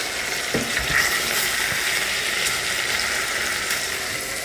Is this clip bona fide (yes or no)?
yes